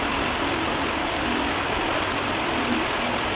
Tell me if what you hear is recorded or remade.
recorded